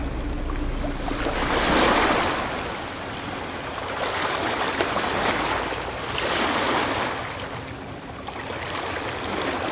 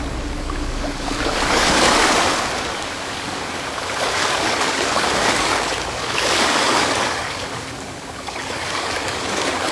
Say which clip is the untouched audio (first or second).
first